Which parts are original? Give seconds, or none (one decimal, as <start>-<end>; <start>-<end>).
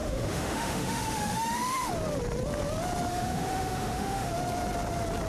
1.9-3.1; 4.3-5.3